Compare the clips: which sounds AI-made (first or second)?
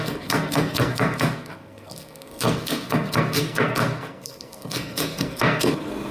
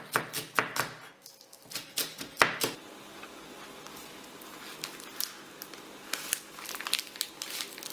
first